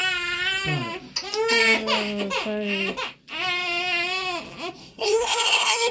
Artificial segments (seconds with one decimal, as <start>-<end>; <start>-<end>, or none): 4.8-5.9